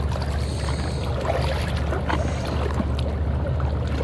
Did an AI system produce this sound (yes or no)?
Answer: no